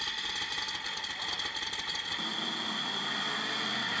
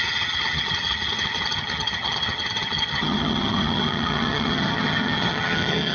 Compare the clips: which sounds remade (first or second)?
second